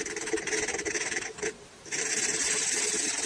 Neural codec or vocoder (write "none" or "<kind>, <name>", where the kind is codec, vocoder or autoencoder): vocoder, BigVGAN v2